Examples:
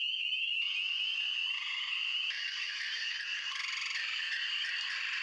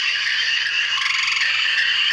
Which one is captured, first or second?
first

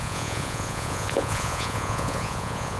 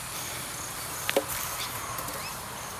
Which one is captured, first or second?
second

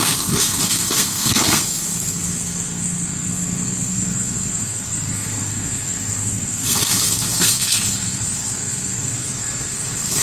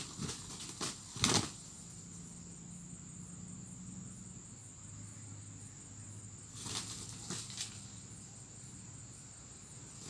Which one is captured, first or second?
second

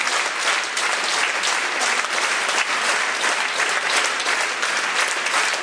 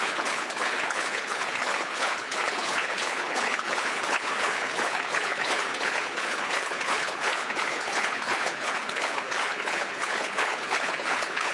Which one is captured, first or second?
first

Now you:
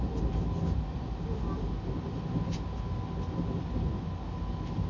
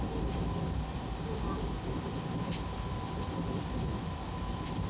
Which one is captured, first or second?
first